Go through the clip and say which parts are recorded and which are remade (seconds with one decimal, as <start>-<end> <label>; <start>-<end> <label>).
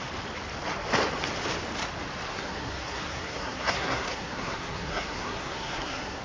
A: 0.0-2.3 recorded; 2.3-6.2 remade